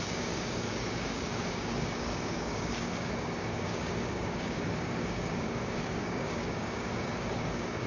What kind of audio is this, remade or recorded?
remade